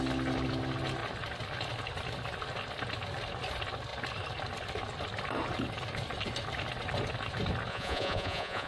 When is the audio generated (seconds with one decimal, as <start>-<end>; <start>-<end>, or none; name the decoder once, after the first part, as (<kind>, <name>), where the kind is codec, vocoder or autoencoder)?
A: 7.7-8.7 (vocoder, Vocos)